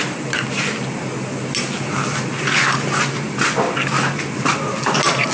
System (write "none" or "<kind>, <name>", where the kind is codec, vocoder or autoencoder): none